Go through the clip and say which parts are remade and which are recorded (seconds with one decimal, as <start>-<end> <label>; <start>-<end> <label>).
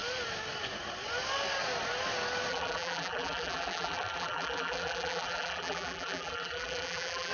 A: 0.0-2.5 recorded; 2.5-7.3 remade